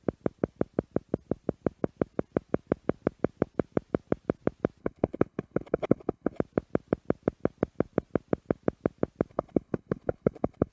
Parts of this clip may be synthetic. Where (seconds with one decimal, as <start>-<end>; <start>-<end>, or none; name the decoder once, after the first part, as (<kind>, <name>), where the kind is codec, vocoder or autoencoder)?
4.8-6.4 (codec, HILCodec); 9.3-10.7